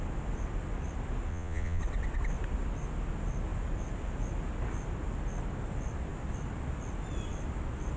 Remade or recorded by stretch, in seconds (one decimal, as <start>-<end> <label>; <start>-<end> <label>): 0.0-1.3 recorded; 1.3-1.8 remade; 1.8-8.0 recorded